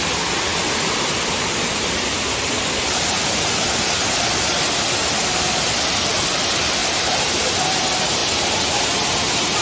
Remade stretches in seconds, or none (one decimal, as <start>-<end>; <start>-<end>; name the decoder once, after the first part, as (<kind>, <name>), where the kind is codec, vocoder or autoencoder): 6.8-7.5 (vocoder, BigVGAN v2)